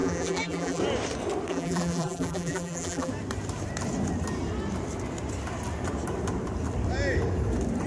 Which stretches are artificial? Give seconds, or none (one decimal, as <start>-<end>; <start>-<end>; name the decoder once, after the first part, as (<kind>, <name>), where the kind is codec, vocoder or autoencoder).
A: 0.0-0.8 (vocoder, BigVGAN v2); 1.5-3.1